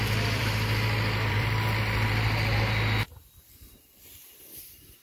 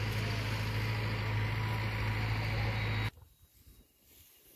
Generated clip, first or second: first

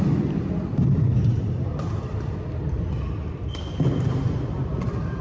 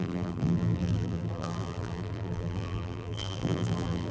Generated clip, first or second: second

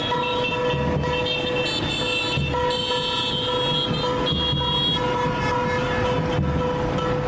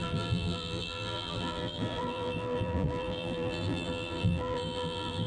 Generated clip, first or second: second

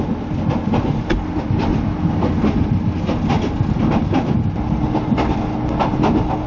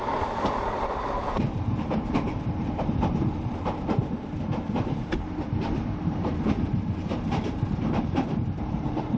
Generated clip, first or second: second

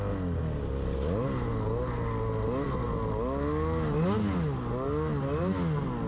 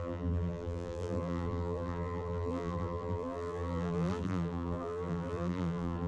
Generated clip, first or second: second